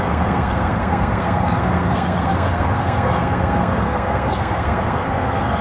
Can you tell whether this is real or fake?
fake